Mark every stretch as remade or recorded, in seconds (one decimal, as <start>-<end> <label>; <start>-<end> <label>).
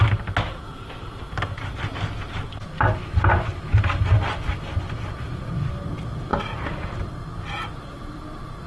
0.0-8.7 recorded